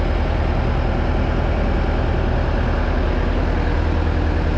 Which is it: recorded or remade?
recorded